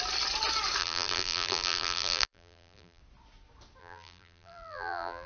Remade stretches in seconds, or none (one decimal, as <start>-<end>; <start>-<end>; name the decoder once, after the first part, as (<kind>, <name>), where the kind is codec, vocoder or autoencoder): 0.8-3.0 (vocoder, BigVGAN v2); 3.8-5.3